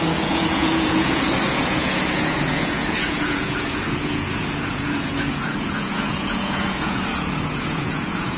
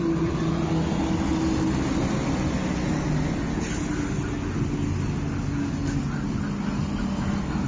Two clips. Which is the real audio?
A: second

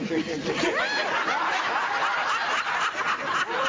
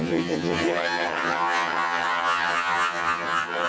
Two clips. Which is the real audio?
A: first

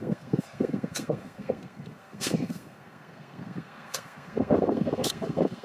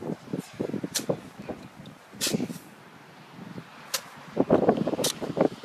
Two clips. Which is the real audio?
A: second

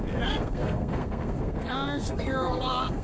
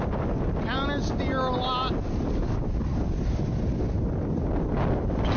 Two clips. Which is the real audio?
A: second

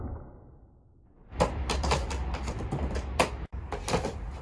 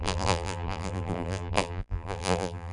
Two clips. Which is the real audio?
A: first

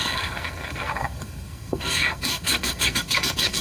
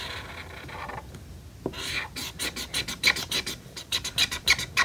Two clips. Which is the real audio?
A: second